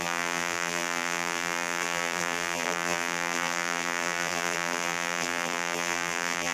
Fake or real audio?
fake